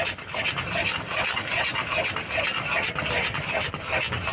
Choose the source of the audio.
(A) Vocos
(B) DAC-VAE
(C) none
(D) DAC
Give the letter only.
C